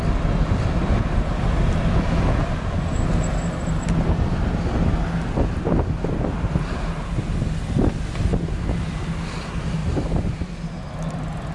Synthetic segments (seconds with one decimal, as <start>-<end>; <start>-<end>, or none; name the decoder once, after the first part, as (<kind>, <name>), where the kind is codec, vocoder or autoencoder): none